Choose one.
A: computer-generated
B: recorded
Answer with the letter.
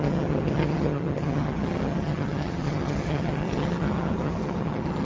A